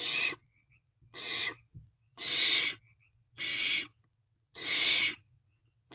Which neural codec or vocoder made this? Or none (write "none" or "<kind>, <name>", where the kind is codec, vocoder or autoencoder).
vocoder, WaveNeXt